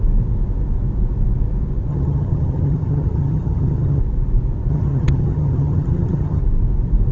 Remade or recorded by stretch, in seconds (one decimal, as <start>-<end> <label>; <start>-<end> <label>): 0.0-1.9 recorded; 1.9-4.0 remade; 4.0-4.7 recorded; 4.7-6.4 remade; 6.4-7.1 recorded